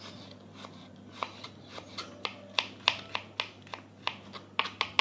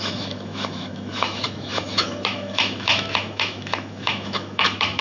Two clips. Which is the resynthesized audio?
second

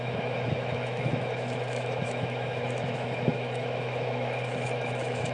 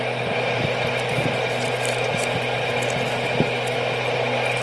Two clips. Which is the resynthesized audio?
first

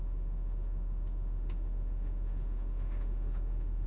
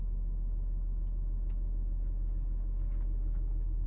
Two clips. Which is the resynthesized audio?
first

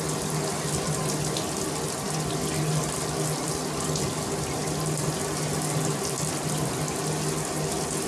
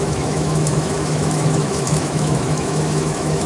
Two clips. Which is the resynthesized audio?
second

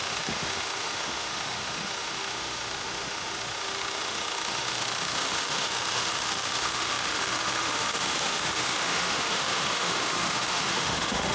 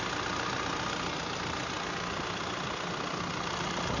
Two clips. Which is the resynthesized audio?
first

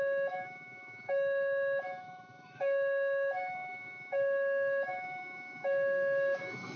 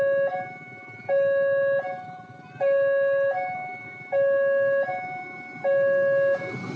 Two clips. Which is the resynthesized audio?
first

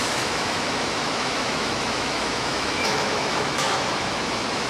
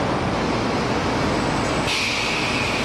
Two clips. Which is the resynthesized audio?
first